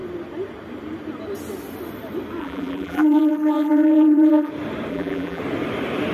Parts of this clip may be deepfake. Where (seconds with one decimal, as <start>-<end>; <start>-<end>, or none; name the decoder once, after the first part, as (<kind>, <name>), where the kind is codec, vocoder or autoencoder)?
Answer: 2.4-4.5 (vocoder, BigVGAN v2); 4.9-5.4